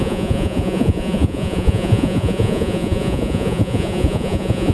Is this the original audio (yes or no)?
no